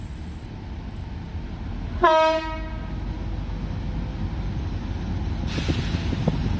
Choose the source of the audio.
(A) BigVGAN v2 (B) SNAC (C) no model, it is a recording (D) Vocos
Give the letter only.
C